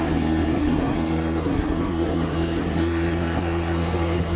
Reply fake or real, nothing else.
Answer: fake